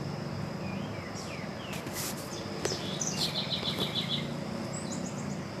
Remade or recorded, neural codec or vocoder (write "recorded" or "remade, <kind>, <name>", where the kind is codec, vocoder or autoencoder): recorded